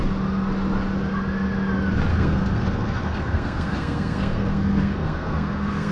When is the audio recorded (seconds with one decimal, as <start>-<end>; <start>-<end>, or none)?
0.0-2.1